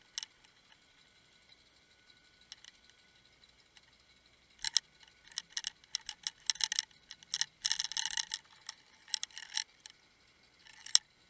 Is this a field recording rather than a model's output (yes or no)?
yes